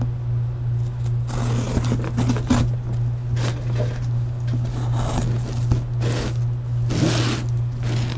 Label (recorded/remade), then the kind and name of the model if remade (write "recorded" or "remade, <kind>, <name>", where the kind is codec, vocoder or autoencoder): recorded